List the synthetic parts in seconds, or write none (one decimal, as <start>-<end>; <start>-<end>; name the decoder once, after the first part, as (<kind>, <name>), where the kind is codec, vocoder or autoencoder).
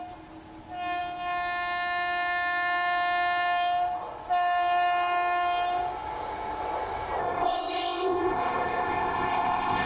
7.2-9.9 (codec, ZipCodec)